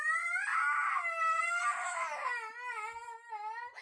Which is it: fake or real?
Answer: real